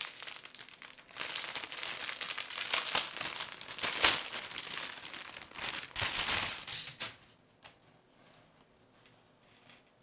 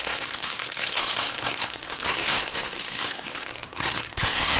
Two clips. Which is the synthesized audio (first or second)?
second